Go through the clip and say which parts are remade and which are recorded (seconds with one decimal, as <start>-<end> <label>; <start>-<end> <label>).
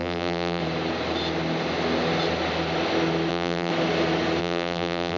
0.0-0.6 remade; 0.6-3.3 recorded; 3.3-3.7 remade; 3.7-4.4 recorded; 4.4-5.2 remade